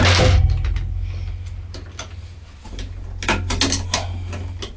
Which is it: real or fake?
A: real